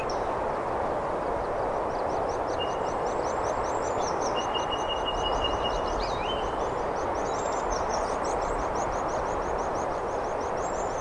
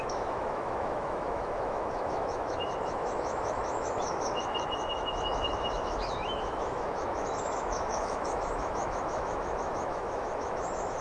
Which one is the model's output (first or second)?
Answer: second